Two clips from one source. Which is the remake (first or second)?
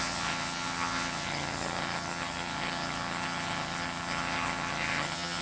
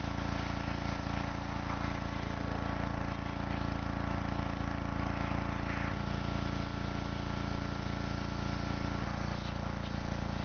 first